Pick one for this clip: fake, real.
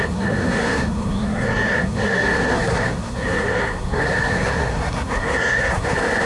fake